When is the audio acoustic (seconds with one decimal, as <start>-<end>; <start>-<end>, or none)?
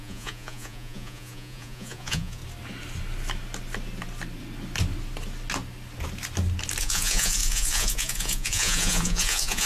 2.4-6.8